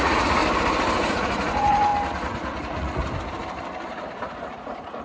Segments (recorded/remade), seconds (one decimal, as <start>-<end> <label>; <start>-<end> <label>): 0.0-0.4 remade; 0.4-1.1 recorded; 1.1-1.9 remade; 1.9-2.6 recorded; 2.6-3.0 remade; 3.0-4.3 recorded; 4.3-5.0 remade